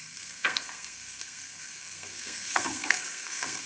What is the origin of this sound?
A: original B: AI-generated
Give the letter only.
B